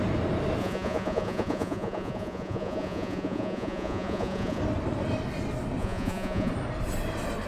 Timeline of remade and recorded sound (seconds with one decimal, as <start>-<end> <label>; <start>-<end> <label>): 0.0-0.6 recorded; 0.6-4.6 remade; 4.6-5.8 recorded; 5.8-6.5 remade; 6.5-7.5 recorded